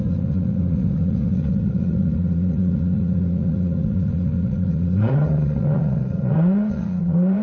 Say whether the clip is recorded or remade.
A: remade